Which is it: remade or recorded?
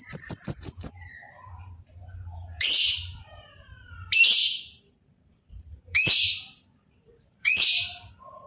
remade